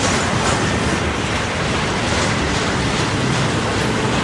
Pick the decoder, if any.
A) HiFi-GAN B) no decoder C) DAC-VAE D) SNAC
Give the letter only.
B